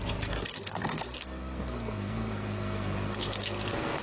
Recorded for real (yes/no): no